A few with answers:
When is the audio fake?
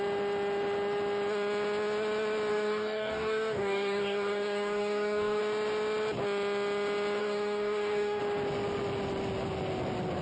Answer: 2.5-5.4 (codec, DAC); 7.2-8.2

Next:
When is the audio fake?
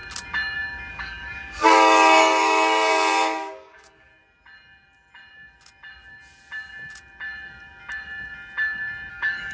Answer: 0.9-4.1 (codec, DAC); 9.1-9.5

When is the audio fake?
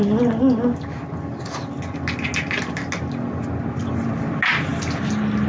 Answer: none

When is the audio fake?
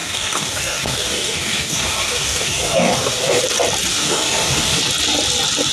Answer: 0.0-3.4 (codec, DAC); 3.9-4.8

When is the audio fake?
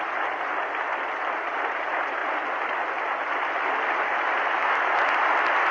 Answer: none